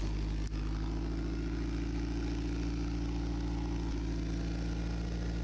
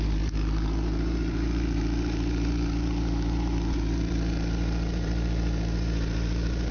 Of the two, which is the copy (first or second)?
second